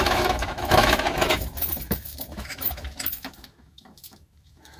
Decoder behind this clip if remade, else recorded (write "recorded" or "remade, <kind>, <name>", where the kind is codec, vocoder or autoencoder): remade, autoencoder, DAC-VAE